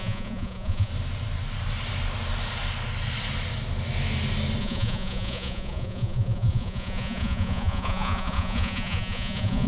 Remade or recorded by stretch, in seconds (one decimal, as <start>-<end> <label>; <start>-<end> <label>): 0.0-0.9 remade; 0.9-4.6 recorded; 4.6-9.7 remade